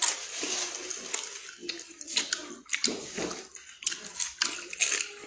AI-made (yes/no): no